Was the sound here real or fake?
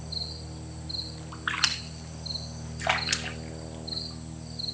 real